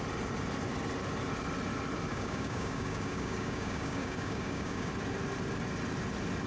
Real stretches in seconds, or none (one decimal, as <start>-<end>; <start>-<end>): 0.0-2.1; 4.9-6.5